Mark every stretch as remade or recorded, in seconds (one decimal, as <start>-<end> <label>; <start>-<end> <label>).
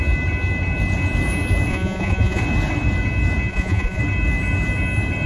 0.0-1.7 recorded; 1.7-2.4 remade; 2.4-3.5 recorded; 3.5-4.0 remade; 4.0-5.3 recorded